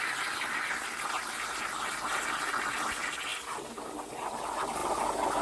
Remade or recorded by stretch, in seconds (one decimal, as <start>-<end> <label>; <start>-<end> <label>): 0.0-5.4 recorded